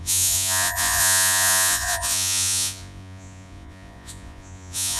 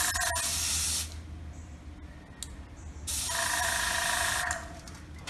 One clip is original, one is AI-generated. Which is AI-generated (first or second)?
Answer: first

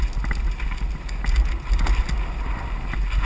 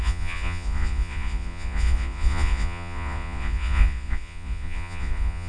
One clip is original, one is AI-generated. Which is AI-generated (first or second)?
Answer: second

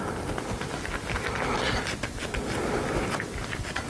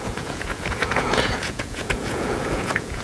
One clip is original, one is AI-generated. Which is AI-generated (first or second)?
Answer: second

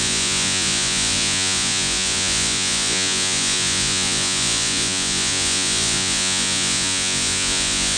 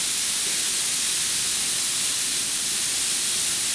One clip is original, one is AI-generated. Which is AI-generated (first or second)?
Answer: first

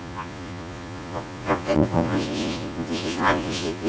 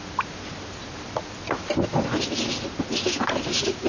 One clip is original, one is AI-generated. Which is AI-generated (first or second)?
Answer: first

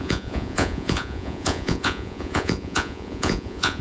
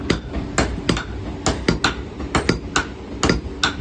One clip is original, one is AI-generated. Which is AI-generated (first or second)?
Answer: first